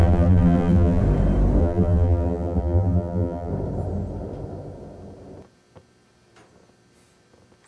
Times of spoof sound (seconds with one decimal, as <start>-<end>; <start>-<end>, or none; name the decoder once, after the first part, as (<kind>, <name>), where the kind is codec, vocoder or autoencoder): 0.0-1.0 (vocoder, BigVGAN v2); 1.6-3.5